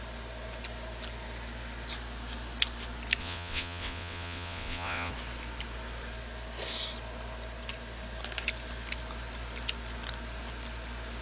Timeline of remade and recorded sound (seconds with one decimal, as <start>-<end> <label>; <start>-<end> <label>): 0.0-3.2 recorded; 3.2-5.1 remade; 5.1-11.2 recorded